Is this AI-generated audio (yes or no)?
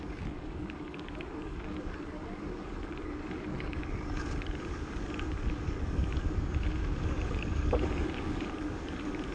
yes